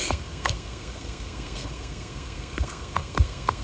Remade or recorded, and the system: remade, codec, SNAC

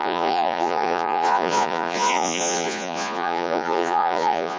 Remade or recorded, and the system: remade, vocoder, Vocos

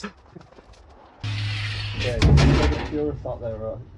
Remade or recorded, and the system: recorded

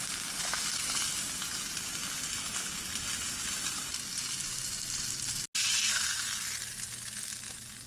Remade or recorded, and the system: recorded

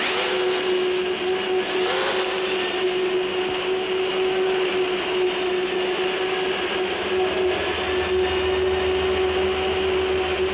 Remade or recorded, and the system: recorded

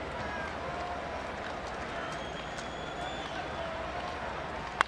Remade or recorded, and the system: recorded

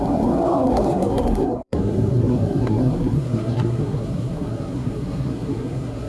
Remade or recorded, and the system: remade, codec, SNAC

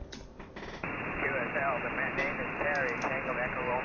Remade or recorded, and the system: recorded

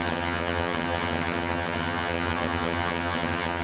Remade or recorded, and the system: remade, vocoder, HiFi-GAN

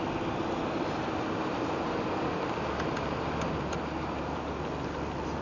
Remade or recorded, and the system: recorded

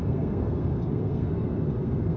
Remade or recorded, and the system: remade, codec, SNAC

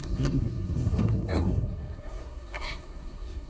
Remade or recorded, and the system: remade, codec, SNAC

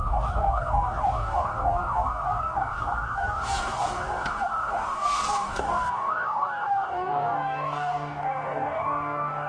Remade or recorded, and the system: remade, codec, DAC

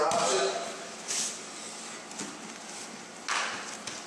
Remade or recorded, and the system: recorded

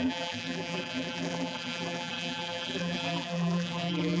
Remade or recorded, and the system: remade, vocoder, BigVGAN v2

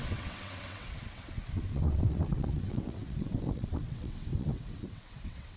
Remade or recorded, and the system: remade, vocoder, WaveNeXt